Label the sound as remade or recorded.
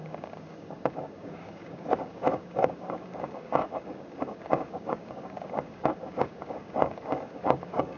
remade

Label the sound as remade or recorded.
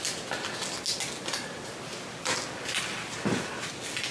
recorded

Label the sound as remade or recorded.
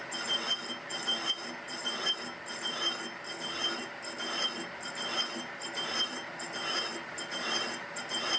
recorded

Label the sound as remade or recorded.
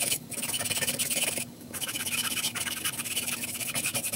remade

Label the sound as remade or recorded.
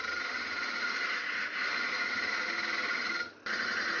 recorded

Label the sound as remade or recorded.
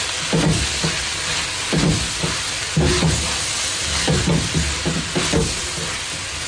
recorded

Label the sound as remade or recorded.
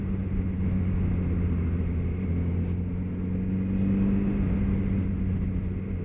recorded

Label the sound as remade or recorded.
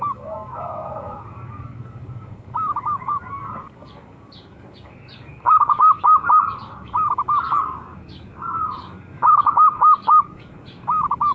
remade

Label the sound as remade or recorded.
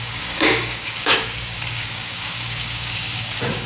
remade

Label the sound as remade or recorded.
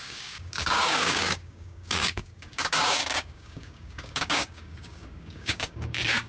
remade